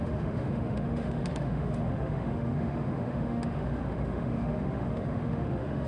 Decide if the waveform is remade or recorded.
remade